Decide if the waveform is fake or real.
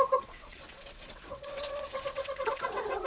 fake